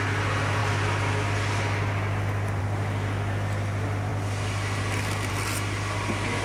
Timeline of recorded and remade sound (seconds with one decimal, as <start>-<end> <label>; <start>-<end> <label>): 0.0-6.4 recorded